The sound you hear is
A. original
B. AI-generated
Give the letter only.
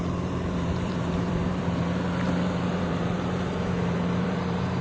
B